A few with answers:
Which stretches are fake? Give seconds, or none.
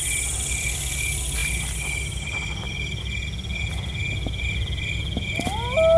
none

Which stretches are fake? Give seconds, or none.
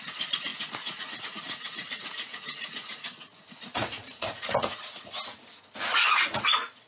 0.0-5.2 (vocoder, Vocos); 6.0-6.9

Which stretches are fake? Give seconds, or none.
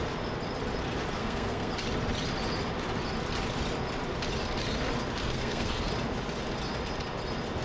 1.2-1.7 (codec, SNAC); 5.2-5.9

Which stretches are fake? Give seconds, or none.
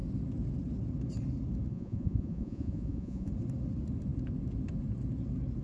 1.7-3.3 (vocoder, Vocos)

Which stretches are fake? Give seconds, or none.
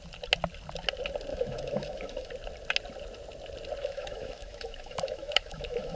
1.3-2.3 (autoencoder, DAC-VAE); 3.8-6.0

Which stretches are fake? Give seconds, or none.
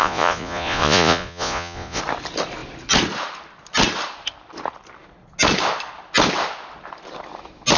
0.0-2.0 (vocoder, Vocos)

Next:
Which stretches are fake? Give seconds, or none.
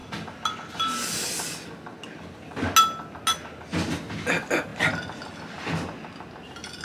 none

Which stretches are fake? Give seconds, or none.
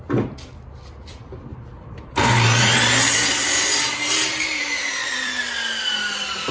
1.5-5.4 (vocoder, BigVGAN v2)